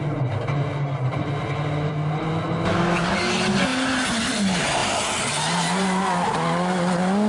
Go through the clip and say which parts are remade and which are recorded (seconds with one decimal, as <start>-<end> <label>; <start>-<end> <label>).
0.0-7.3 recorded